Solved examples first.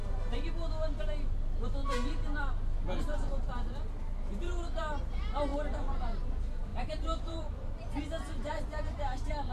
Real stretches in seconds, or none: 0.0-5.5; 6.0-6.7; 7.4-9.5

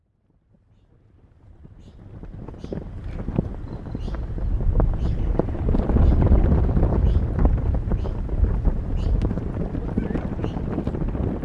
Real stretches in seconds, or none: 0.0-11.4